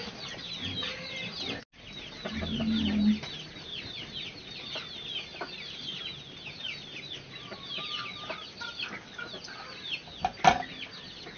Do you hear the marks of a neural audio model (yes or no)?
no